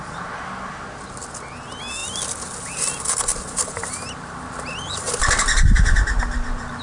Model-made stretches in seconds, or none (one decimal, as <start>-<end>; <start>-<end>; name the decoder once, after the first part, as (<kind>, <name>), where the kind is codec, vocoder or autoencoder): none